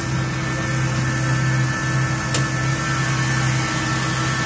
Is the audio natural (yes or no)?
yes